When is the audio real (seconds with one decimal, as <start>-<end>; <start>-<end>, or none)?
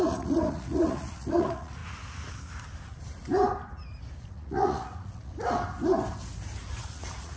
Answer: 1.8-4.3; 5.3-6.6